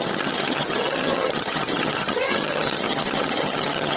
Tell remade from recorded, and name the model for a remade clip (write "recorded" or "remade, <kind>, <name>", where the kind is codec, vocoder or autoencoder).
remade, vocoder, HiFi-GAN